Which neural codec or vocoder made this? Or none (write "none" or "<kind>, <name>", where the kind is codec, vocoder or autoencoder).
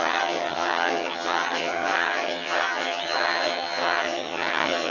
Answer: vocoder, HiFi-GAN